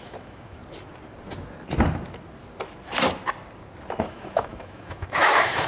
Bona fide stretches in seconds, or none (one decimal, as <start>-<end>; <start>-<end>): 0.6-4.0